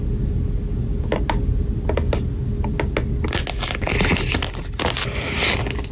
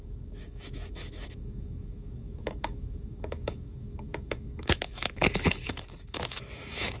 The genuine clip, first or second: first